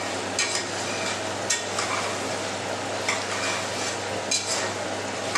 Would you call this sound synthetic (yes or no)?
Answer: no